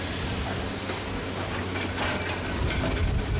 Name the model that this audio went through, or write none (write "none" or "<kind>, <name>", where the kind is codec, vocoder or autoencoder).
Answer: none